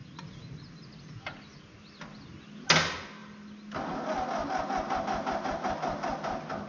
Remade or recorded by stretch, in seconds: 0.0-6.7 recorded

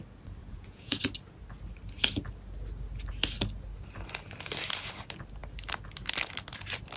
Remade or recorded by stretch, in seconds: 0.0-0.4 recorded; 0.4-1.0 remade; 1.0-7.0 recorded